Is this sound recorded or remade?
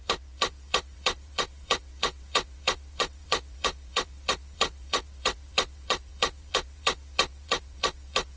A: remade